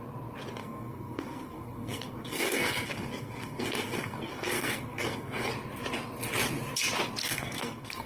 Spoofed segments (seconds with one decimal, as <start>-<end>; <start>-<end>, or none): 0.6-5.5; 7.2-8.1